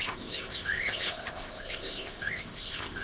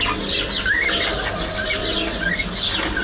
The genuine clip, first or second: second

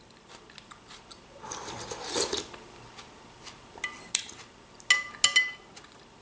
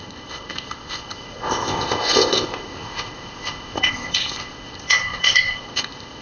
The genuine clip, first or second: first